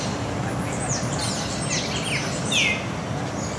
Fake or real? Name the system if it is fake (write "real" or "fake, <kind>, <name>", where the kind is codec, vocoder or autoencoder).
real